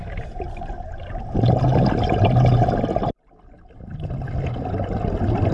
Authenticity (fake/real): real